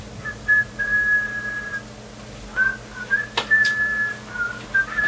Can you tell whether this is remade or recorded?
recorded